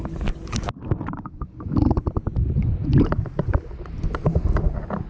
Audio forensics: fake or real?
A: real